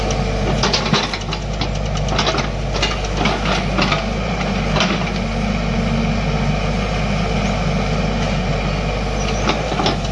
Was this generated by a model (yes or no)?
no